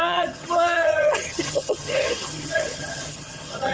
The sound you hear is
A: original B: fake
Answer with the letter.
B